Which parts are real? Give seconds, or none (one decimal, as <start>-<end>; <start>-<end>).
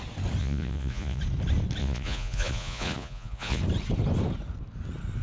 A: 0.0-0.4; 1.2-1.8; 3.6-5.2